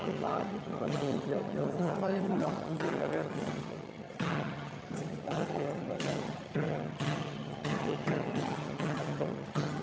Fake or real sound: fake